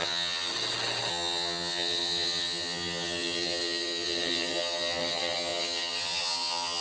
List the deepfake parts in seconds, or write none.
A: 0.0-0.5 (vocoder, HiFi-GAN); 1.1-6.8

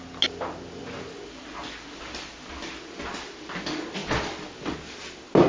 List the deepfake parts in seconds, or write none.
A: 0.8-2.4 (vocoder, BigVGAN v2)

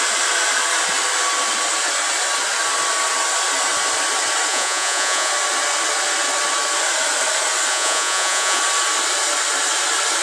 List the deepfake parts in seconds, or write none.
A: 4.5-5.3 (vocoder, Vocos); 7.7-8.6

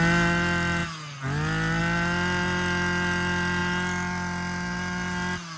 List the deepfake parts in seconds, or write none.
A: none